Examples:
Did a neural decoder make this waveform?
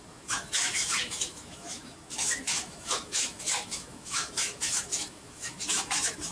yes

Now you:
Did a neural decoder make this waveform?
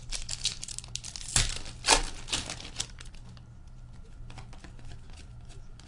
no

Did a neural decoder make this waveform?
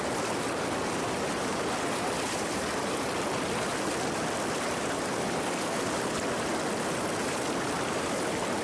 no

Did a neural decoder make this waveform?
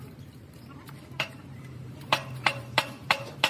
yes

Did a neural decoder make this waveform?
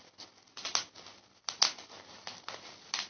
no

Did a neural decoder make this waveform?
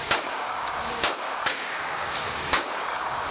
yes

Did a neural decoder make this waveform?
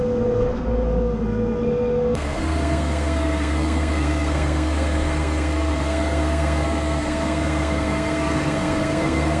yes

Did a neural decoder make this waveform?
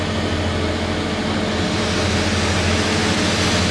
no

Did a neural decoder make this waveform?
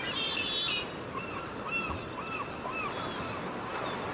no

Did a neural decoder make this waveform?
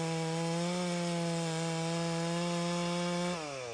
no